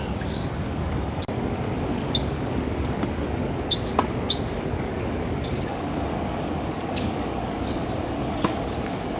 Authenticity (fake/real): fake